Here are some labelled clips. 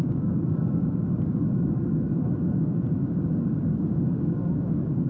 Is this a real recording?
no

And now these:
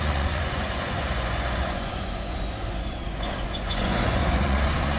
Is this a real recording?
no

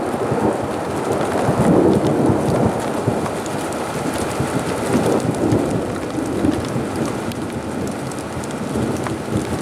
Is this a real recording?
yes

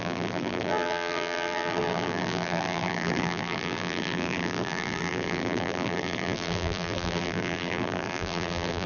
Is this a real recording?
no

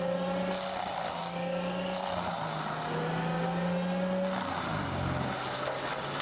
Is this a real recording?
yes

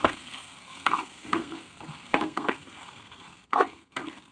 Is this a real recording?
no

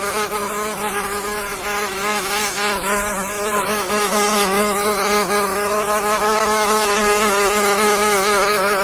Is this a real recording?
no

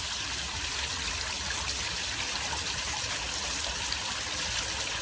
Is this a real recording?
yes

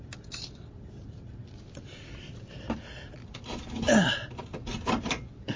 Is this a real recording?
no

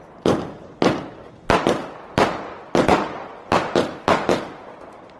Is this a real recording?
yes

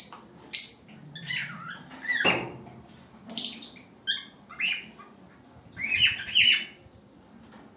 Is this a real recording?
yes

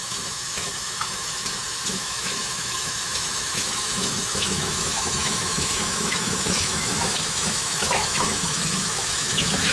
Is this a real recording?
no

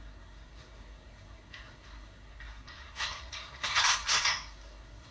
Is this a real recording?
no